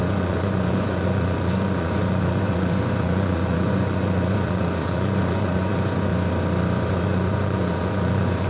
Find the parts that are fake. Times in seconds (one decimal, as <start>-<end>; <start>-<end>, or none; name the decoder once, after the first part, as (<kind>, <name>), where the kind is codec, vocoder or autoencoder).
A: 0.0-6.1 (vocoder, Vocos); 6.9-8.5